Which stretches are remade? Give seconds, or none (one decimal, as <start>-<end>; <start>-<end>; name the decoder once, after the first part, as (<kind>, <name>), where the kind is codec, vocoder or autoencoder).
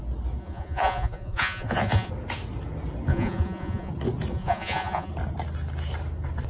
0.4-2.1 (vocoder, Vocos); 3.1-3.9; 4.3-5.1